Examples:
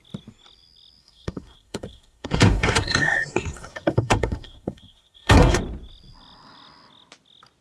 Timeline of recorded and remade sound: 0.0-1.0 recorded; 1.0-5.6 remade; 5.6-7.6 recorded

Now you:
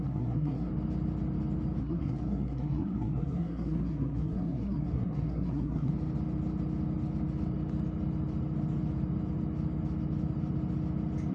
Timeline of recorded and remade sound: 0.0-0.7 remade; 0.7-1.8 recorded; 1.8-5.9 remade; 5.9-11.3 recorded

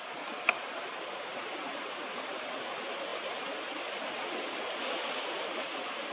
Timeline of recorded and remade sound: 0.0-6.1 recorded

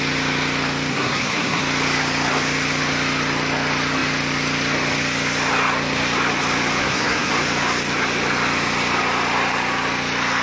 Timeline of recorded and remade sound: 0.0-0.9 recorded; 0.9-1.6 remade; 1.6-6.8 recorded; 6.8-7.3 remade; 7.3-10.4 recorded

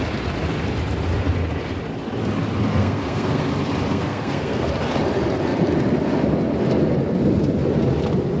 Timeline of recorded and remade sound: 0.0-2.7 recorded; 2.7-3.5 remade; 3.5-3.9 recorded; 3.9-4.7 remade; 4.7-8.4 recorded